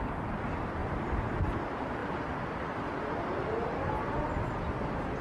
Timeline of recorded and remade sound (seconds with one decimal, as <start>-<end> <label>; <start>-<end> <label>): 0.0-0.8 remade; 0.8-1.4 recorded; 1.4-2.0 remade; 2.0-5.2 recorded